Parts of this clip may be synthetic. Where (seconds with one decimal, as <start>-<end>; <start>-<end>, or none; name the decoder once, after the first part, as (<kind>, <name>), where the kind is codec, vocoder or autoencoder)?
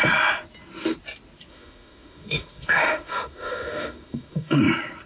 1.5-4.6 (autoencoder, DAC-VAE)